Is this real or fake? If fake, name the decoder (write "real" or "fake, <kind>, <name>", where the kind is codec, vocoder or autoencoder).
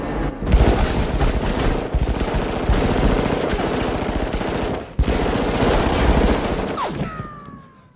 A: real